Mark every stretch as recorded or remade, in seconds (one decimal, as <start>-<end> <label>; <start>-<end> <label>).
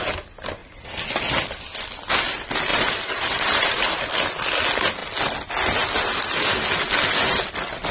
0.0-2.7 recorded; 2.7-4.0 remade; 4.0-7.9 recorded